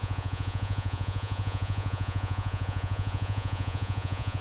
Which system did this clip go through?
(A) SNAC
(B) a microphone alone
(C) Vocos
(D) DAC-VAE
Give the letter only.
C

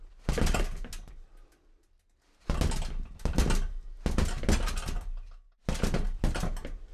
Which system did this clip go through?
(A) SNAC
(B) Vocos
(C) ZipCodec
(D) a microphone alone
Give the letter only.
D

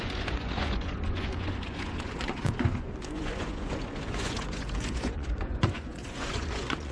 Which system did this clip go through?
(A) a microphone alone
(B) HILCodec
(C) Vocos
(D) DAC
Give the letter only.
C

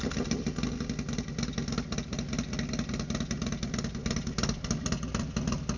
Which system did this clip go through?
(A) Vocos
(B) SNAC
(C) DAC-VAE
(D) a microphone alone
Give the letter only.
D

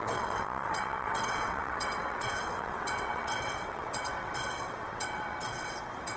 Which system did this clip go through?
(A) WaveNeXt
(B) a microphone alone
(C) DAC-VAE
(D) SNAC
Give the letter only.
A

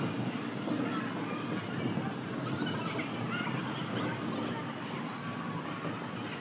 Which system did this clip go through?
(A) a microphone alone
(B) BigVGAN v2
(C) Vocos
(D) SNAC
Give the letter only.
A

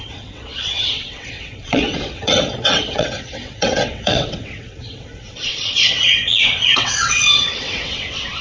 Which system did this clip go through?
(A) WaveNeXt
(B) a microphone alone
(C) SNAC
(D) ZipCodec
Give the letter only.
A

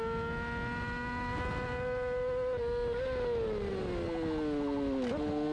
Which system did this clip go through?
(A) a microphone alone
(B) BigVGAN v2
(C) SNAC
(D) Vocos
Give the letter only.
A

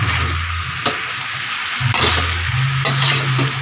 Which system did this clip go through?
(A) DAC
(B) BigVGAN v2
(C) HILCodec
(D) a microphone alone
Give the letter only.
D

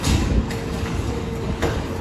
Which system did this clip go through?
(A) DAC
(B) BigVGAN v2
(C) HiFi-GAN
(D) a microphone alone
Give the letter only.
A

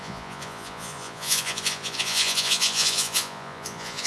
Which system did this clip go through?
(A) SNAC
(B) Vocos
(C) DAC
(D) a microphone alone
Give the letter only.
B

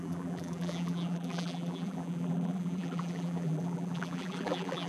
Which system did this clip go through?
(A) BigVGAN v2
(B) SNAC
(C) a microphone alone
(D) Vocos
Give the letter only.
A